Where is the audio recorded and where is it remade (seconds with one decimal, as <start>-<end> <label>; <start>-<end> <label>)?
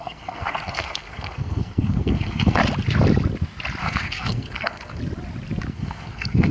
0.0-2.6 remade; 2.6-3.8 recorded; 3.8-5.0 remade; 5.0-5.7 recorded; 5.7-6.5 remade